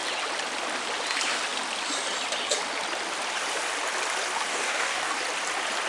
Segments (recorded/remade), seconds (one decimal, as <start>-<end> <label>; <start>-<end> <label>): 0.0-4.5 recorded; 4.5-5.1 remade; 5.1-5.9 recorded